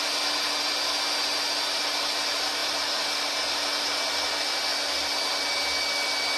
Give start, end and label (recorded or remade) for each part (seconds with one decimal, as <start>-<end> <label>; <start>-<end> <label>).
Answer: 0.0-6.4 recorded